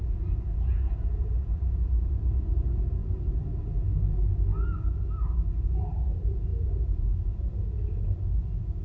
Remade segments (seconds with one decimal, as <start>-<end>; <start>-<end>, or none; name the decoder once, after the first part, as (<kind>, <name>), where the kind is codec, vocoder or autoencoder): 0.0-4.2 (vocoder, Vocos); 5.6-8.8